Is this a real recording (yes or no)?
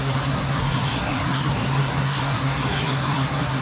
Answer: no